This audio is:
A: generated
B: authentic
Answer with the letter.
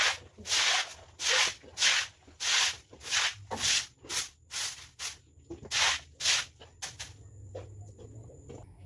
B